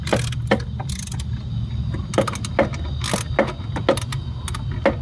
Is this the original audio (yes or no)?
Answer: yes